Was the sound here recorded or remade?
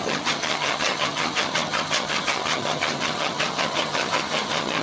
remade